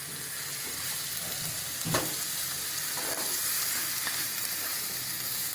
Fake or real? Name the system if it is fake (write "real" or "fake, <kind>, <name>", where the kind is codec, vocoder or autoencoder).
real